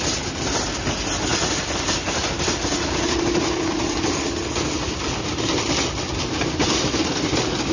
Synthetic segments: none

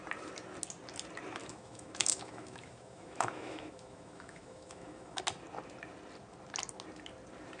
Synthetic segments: 1.4-5.2 (autoencoder, DAC-VAE)